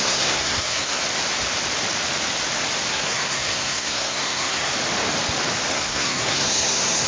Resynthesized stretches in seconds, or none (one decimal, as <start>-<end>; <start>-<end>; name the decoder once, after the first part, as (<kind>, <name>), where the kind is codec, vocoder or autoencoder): 0.0-1.0 (codec, SNAC); 2.9-4.7; 5.7-7.1